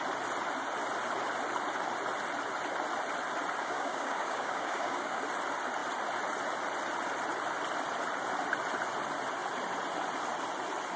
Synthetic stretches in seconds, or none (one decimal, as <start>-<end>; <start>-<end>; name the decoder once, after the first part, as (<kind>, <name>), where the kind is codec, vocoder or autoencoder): 3.6-5.2 (codec, DAC)